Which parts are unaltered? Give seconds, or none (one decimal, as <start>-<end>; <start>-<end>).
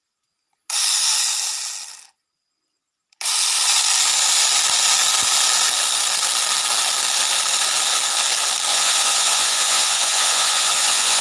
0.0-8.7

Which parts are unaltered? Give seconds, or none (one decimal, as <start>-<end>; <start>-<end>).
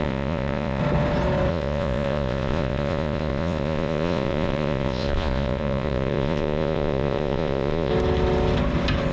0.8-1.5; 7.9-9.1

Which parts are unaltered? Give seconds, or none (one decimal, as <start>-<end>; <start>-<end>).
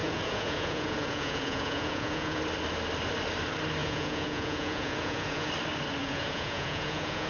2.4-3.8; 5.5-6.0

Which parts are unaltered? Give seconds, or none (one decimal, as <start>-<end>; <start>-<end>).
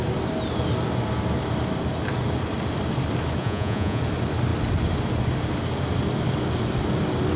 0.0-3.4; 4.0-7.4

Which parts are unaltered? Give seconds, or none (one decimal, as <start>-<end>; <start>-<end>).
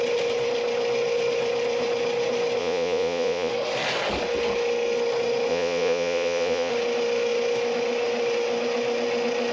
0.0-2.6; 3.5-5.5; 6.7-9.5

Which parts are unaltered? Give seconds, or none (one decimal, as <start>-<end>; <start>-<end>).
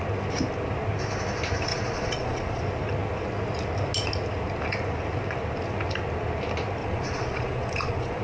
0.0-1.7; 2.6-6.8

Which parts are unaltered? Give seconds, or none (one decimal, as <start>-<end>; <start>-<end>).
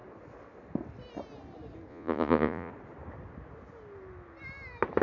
0.0-1.9; 2.7-5.0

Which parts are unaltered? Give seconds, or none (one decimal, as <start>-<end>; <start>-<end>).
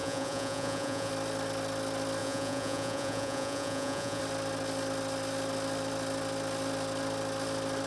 1.1-2.2; 4.2-7.9